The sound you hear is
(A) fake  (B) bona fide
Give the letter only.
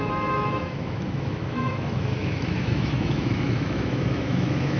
A